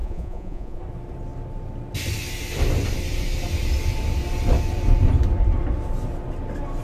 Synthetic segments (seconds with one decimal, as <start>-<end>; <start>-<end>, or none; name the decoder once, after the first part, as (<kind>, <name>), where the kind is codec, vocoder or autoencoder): 0.0-0.8 (vocoder, Vocos)